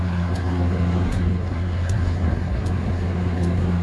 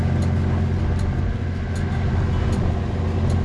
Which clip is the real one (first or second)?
second